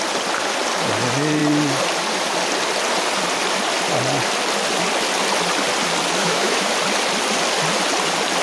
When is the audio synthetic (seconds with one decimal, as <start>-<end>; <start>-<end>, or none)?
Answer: 6.2-6.7